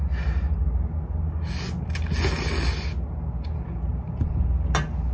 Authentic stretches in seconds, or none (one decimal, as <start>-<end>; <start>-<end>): 0.0-5.1